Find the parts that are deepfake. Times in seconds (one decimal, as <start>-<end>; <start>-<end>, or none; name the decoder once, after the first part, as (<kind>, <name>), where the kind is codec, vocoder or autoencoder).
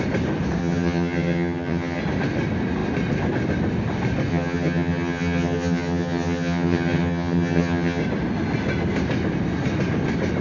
0.6-2.0 (vocoder, HiFi-GAN); 4.3-8.0